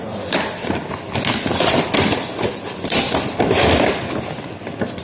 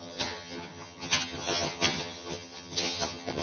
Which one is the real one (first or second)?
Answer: first